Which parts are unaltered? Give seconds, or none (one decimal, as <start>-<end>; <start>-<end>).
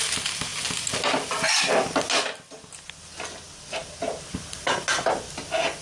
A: 0.0-5.8